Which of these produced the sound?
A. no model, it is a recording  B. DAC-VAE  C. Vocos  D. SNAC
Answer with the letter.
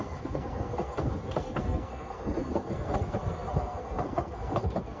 D